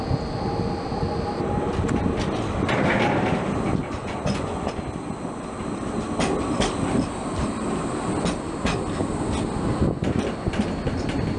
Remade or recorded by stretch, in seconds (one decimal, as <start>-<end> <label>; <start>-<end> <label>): 0.0-4.0 recorded; 4.0-4.7 remade; 4.7-11.4 recorded